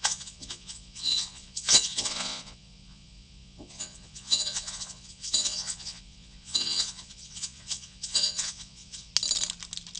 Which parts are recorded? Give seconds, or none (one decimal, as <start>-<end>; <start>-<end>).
9.1-10.0